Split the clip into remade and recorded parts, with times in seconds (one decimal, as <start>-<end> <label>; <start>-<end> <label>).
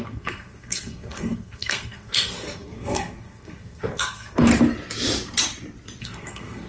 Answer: 0.0-4.5 remade; 4.5-6.0 recorded; 6.0-6.7 remade